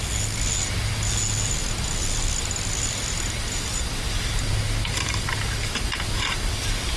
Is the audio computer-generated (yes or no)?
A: no